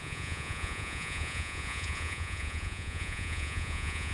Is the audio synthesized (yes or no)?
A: yes